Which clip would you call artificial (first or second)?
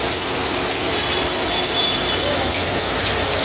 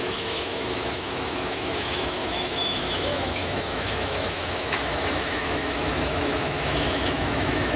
second